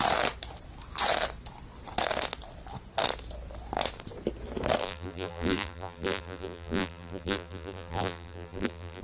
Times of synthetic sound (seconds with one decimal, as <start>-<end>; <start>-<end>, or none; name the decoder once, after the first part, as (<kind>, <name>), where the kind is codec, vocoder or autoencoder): 4.8-9.0 (vocoder, BigVGAN v2)